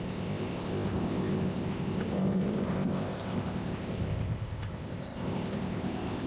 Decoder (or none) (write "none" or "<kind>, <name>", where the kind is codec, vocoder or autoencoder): codec, ZipCodec